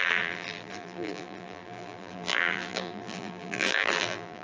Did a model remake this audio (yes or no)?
yes